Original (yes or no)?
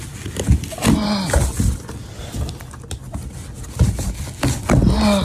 yes